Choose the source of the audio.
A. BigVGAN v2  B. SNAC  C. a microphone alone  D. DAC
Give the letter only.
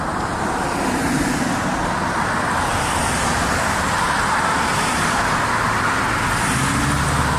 C